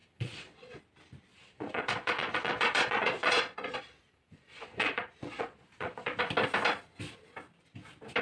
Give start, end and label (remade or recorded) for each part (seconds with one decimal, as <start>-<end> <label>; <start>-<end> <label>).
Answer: 0.0-0.8 remade; 0.8-1.3 recorded; 1.3-6.2 remade; 6.2-8.2 recorded